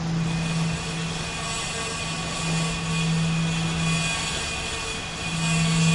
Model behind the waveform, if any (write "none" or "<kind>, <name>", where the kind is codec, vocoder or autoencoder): none